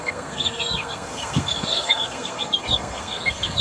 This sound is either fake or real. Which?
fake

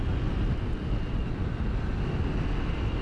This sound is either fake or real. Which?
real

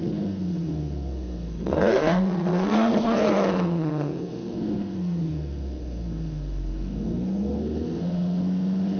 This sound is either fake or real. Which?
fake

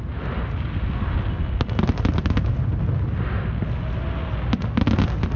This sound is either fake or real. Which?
real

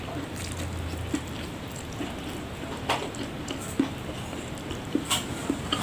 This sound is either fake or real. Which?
real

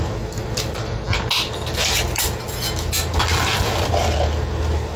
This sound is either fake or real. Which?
real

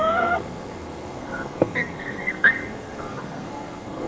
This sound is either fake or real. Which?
fake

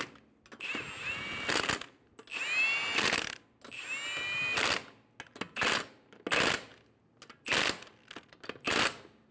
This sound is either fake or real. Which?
real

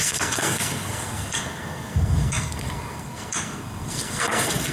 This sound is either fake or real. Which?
fake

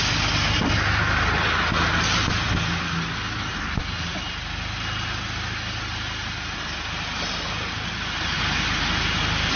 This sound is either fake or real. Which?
real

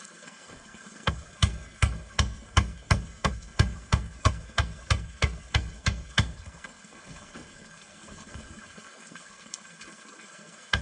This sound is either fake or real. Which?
fake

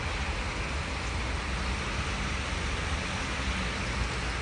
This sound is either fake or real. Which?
real